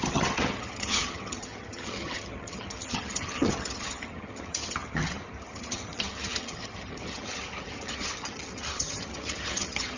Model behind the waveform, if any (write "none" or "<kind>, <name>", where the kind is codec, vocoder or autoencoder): vocoder, HiFi-GAN